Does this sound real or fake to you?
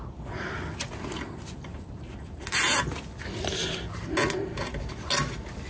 real